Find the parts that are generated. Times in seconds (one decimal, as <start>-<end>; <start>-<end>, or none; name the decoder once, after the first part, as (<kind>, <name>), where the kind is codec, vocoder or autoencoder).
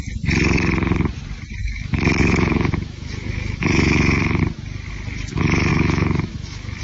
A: 1.6-4.4 (autoencoder, DAC-VAE); 5.7-6.8